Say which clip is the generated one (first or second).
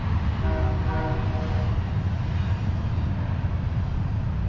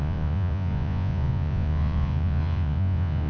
second